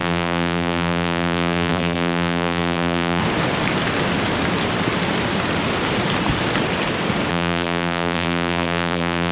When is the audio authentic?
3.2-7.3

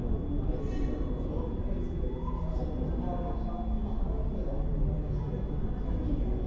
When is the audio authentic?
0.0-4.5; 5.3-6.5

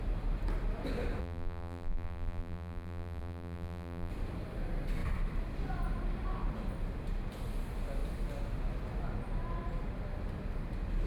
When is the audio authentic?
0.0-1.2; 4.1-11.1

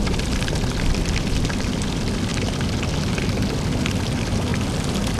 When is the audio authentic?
0.0-5.2